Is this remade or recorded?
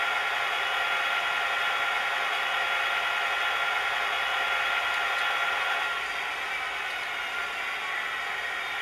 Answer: recorded